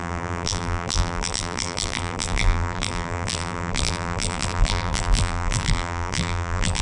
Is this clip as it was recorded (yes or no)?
no